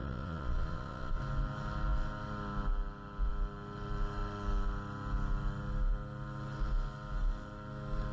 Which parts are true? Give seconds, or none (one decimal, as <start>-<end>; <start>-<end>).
1.2-8.1